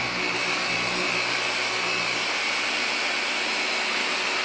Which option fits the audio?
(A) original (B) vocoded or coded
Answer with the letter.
A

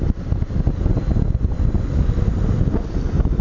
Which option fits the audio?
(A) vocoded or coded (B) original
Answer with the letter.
B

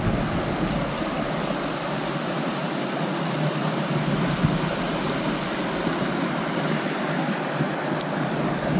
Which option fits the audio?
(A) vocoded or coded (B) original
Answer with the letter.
B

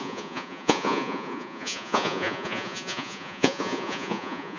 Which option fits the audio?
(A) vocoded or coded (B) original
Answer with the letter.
A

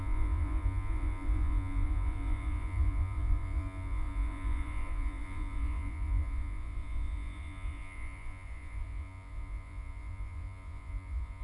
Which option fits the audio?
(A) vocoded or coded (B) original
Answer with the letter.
A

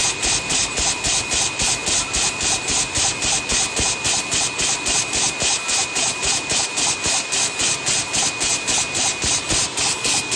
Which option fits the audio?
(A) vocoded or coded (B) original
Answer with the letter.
B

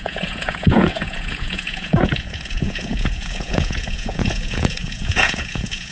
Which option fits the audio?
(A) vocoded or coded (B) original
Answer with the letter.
A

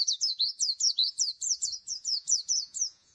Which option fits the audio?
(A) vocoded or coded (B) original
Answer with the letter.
A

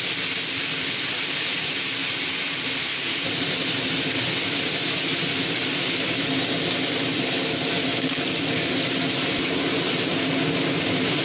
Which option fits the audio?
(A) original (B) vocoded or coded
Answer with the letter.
A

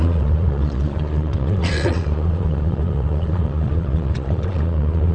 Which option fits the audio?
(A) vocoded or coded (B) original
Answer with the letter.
A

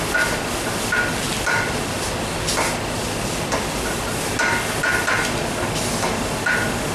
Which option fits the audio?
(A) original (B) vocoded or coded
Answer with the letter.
A